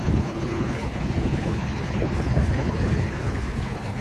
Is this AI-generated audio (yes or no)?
yes